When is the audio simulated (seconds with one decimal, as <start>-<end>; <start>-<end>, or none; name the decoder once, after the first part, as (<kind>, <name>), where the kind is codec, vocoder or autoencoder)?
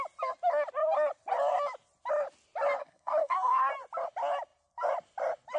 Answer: 2.8-3.7 (codec, SNAC)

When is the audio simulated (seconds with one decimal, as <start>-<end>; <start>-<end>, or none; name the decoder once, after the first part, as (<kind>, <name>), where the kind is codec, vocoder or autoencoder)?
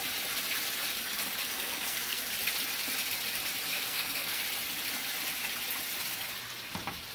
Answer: 1.4-2.3 (codec, SNAC); 3.7-4.4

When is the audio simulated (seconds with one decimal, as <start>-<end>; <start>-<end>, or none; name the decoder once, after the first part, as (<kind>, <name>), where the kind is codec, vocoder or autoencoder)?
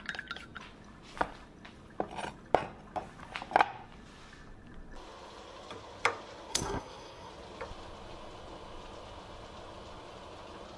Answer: 6.5-7.3 (codec, SNAC)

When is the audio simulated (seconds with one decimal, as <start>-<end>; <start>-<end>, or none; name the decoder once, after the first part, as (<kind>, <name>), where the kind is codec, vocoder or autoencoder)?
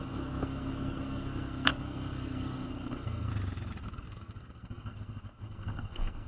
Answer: 0.0-3.3 (codec, SNAC); 3.8-6.3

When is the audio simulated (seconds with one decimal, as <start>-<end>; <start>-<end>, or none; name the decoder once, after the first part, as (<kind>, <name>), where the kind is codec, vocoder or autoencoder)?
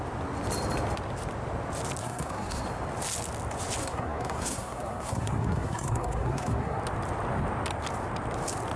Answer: 2.0-2.6 (codec, SNAC); 3.8-6.8